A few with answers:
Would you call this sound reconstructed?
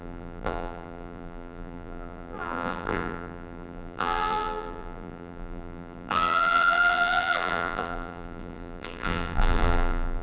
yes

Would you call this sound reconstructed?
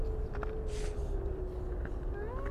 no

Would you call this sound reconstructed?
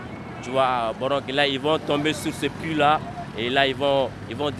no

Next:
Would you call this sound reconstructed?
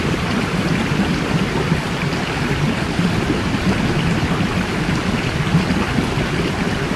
no